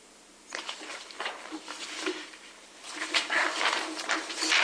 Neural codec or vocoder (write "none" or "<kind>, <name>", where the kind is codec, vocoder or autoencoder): vocoder, BigVGAN v2